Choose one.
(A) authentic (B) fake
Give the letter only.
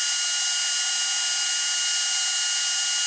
A